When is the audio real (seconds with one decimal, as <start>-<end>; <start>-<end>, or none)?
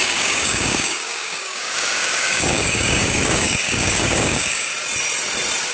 4.7-5.7